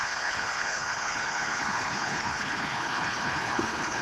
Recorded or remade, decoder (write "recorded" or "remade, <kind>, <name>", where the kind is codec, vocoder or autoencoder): remade, codec, HILCodec